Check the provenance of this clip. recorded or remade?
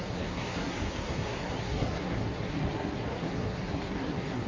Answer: remade